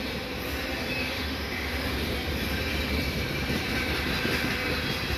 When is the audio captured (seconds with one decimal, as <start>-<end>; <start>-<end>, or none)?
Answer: 0.0-1.0; 1.9-5.2